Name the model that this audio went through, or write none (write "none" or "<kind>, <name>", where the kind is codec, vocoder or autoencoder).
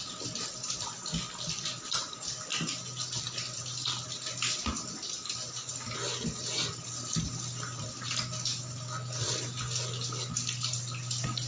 none